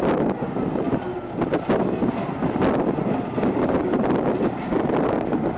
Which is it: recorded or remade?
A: recorded